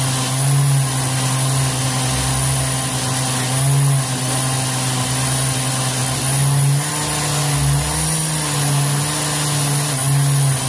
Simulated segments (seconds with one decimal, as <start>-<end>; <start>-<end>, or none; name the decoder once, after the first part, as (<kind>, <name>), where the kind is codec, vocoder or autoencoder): none